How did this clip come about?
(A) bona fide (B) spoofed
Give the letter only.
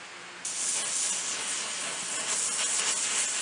A